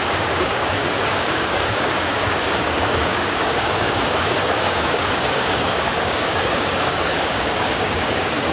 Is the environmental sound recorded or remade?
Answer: remade